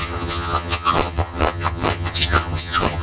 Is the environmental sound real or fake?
fake